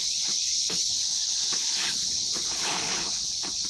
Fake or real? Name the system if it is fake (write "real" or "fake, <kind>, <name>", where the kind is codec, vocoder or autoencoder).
fake, codec, HILCodec